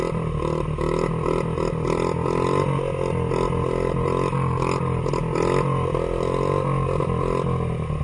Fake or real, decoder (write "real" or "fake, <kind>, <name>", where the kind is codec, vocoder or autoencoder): real